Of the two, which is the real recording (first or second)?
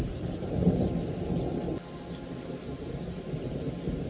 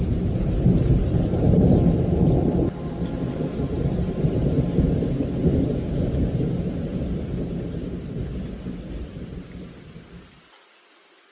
first